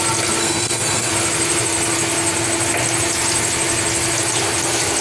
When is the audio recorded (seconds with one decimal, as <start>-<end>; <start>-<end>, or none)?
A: 0.0-0.4; 1.1-5.0